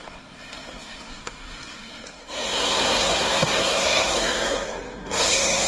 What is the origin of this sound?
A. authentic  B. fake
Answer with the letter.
B